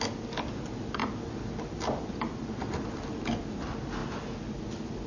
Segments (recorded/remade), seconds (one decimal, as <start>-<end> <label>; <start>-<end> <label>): 0.0-5.1 recorded